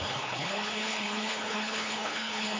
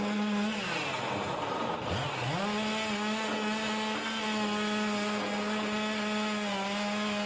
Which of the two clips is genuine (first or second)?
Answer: second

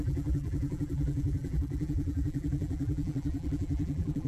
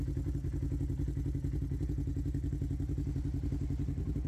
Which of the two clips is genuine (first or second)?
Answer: second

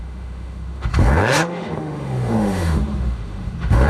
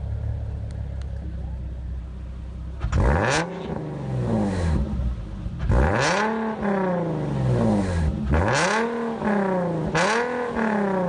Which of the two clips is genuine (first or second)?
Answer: second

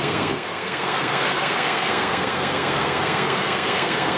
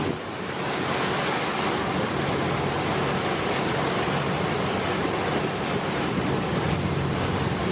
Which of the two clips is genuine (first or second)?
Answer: second